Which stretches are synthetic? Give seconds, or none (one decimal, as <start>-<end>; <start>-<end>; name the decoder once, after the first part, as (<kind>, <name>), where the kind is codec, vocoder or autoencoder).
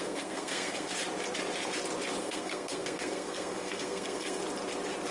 0.0-0.9 (codec, SNAC); 2.2-4.4